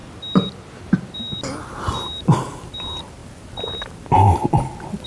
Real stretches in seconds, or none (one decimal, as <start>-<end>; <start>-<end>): 0.0-5.1